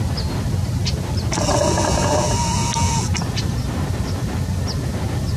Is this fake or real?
real